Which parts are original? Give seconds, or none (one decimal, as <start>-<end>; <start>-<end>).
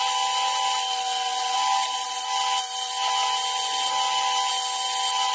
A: 0.0-5.3